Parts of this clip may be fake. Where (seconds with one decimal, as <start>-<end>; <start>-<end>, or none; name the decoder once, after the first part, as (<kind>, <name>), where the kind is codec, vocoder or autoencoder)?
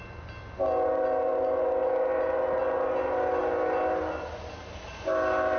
none